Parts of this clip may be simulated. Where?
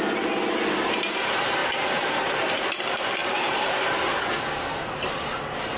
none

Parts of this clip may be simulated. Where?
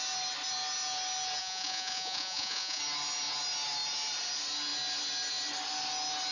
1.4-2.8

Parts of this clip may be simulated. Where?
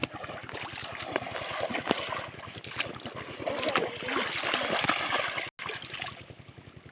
none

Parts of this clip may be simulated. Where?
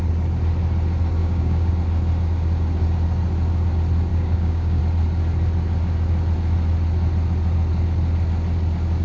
1.2-1.7; 4.1-4.8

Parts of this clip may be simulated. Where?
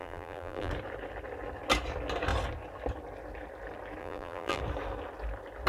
0.0-0.7; 4.0-4.6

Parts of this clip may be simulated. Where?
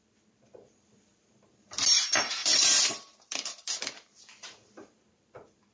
0.0-2.4; 2.9-5.7